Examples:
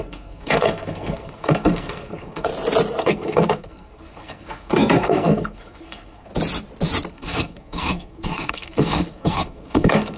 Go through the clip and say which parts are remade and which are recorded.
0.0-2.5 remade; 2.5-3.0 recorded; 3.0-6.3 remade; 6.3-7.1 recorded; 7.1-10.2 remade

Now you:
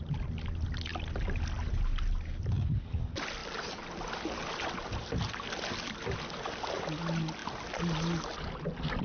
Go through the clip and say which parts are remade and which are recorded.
0.0-9.0 recorded

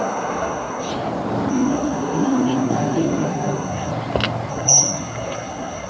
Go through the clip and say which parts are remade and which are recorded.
0.0-0.9 remade; 0.9-1.5 recorded; 1.5-3.9 remade; 3.9-4.5 recorded; 4.5-5.9 remade

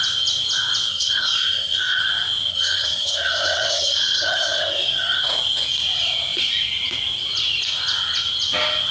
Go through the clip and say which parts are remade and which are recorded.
0.0-0.9 recorded; 0.9-2.0 remade; 2.0-2.5 recorded; 2.5-5.2 remade; 5.2-8.9 recorded